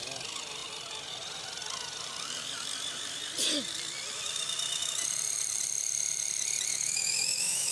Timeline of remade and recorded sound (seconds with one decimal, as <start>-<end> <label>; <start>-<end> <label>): 0.0-6.7 recorded; 6.7-7.7 remade